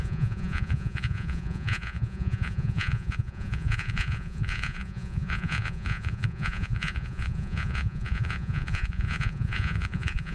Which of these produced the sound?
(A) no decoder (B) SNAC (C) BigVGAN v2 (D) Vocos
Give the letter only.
D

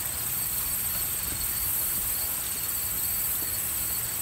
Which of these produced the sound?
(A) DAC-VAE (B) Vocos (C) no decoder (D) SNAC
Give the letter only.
C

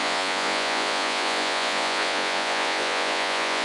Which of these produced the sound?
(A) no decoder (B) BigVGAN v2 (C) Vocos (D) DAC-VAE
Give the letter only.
C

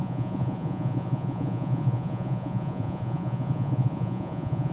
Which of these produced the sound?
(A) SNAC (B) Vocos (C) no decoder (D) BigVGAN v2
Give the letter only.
B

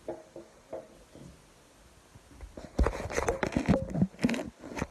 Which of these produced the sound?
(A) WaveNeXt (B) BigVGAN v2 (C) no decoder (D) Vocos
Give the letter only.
C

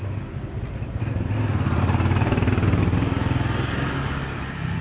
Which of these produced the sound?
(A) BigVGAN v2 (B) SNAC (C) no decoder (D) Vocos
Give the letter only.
C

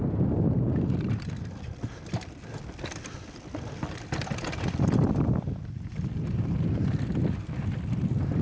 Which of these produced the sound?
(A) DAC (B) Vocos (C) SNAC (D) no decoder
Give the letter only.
D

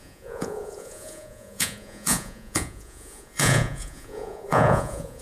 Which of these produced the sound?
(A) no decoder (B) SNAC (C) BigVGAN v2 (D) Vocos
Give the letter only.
D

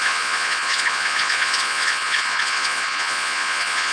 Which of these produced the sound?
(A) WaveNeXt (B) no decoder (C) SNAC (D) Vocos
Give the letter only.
D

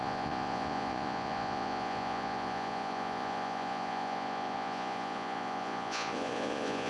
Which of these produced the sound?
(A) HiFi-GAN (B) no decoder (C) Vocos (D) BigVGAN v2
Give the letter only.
C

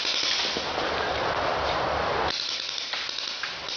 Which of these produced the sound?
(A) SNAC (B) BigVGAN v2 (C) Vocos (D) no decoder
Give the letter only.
D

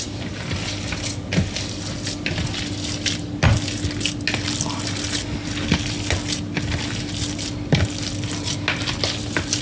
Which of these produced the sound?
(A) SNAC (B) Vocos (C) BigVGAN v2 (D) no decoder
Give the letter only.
D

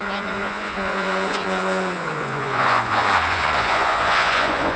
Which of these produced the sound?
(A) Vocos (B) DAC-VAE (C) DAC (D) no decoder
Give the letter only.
A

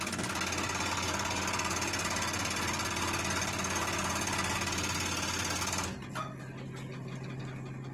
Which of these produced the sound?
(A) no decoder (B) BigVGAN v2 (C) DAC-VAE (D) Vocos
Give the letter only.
A